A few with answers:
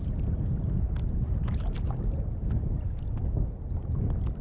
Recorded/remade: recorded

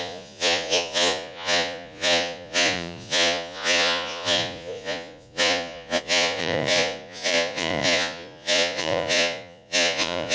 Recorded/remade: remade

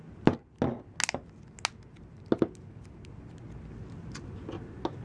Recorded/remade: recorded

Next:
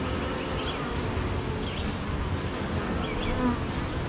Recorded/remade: recorded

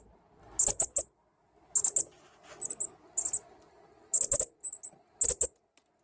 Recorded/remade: recorded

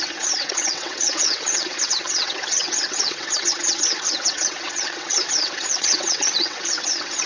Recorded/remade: remade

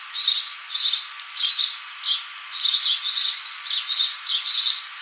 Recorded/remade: recorded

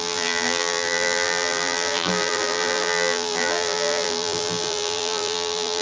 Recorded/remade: remade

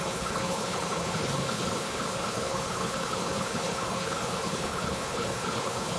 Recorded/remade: remade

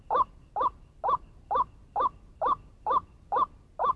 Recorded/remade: recorded